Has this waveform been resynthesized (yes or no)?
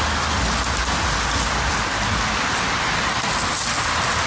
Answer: no